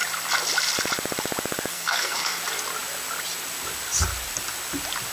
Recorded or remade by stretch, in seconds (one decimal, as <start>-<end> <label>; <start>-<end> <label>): 0.0-1.7 recorded; 1.7-2.4 remade; 2.4-5.1 recorded